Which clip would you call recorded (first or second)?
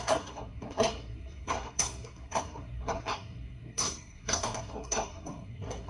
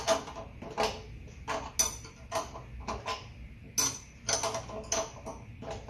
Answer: second